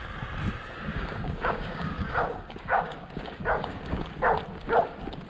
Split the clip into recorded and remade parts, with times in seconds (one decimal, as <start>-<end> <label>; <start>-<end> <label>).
0.0-0.9 recorded; 0.9-4.1 remade; 4.1-5.3 recorded

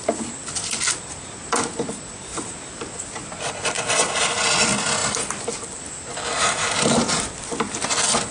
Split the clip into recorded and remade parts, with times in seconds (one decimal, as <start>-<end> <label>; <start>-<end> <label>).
0.0-2.3 remade; 2.3-3.0 recorded; 3.0-5.0 remade; 5.0-5.5 recorded; 5.5-7.8 remade; 7.8-8.3 recorded